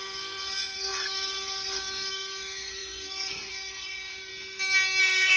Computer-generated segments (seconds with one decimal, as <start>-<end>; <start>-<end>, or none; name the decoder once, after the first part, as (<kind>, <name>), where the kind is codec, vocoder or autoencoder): 0.0-4.3 (codec, SNAC); 5.0-5.4